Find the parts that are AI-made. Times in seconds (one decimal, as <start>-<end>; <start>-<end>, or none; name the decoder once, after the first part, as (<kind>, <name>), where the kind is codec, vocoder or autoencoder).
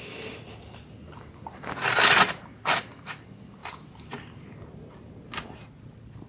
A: 3.6-5.1 (vocoder, BigVGAN v2)